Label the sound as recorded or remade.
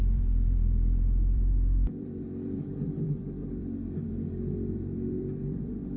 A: remade